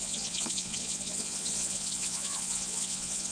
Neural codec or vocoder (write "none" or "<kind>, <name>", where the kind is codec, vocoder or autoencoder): vocoder, Vocos